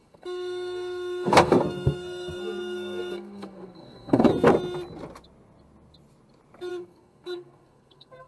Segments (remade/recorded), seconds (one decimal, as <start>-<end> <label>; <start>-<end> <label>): 0.0-4.3 remade; 4.3-6.7 recorded; 6.7-8.3 remade